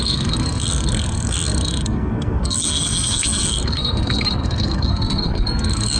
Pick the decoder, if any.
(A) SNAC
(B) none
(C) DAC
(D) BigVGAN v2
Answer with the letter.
A